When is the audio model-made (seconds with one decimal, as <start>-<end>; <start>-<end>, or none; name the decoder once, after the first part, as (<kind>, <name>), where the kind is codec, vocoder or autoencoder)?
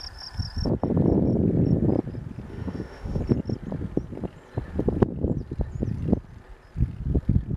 2.5-3.2 (autoencoder, DAC-VAE)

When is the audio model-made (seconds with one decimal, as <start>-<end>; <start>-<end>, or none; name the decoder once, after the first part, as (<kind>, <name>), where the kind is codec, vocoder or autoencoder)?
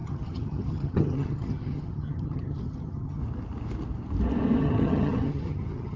0.0-3.2 (vocoder, HiFi-GAN); 4.6-6.0